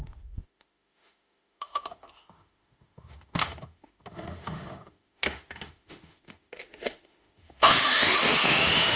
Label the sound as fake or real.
fake